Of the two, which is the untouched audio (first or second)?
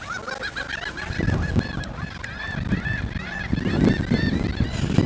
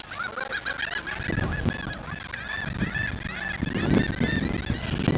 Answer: second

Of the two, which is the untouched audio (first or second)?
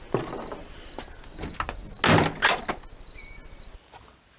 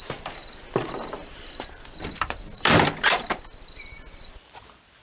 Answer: first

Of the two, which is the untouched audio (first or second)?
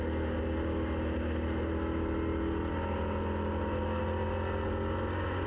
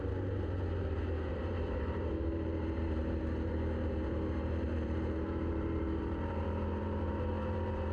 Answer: first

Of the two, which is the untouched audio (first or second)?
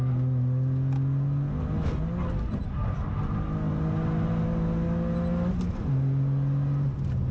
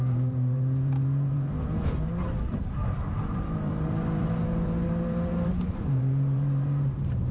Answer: first